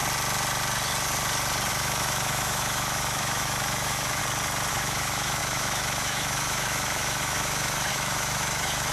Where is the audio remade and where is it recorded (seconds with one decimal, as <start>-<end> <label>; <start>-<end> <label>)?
0.0-1.7 recorded; 1.7-4.2 remade; 4.2-4.7 recorded; 4.7-8.9 remade